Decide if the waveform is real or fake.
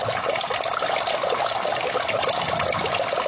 real